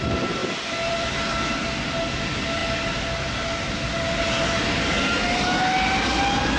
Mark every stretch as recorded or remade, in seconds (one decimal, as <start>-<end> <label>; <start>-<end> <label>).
0.0-6.6 recorded